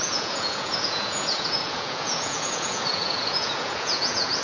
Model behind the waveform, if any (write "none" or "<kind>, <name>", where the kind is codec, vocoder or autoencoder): vocoder, Vocos